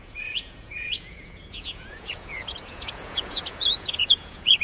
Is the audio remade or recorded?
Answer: remade